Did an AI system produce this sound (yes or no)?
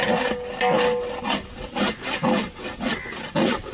no